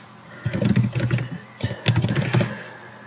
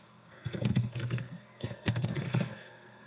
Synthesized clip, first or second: second